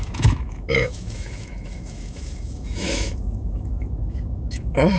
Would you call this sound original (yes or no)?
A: no